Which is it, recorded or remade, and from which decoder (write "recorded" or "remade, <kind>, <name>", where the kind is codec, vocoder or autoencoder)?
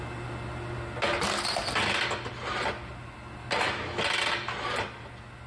recorded